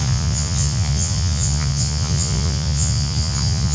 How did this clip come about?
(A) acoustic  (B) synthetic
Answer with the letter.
B